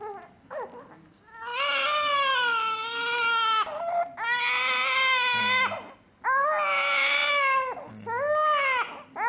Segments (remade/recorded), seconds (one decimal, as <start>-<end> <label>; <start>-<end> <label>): 0.0-9.3 recorded